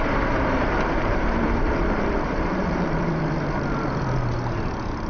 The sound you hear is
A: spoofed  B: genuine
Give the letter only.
A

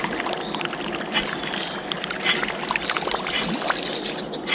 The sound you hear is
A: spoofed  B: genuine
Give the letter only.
B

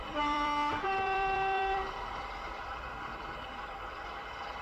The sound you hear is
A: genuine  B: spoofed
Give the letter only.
B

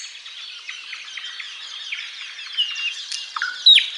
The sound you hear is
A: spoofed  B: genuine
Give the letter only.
B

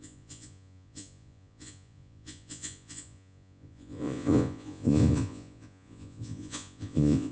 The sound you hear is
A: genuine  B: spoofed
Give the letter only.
B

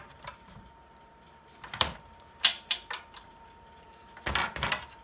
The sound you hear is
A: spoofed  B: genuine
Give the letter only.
A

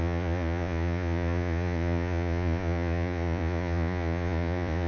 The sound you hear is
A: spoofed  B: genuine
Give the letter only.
A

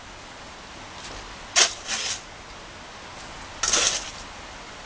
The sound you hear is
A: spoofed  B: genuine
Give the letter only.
B